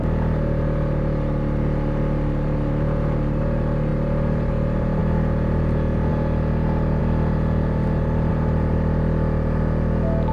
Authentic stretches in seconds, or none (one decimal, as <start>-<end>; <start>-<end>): 0.0-10.3